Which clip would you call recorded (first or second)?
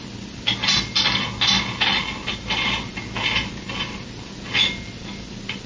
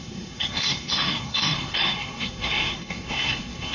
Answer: first